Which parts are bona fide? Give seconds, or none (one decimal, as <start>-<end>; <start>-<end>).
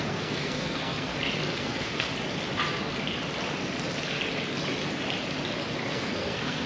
1.1-1.6; 2.1-5.9